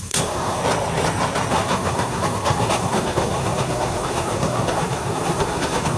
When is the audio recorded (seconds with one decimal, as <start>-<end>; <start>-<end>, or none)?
0.6-1.5